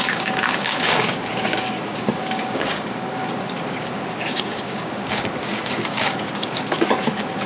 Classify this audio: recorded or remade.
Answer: remade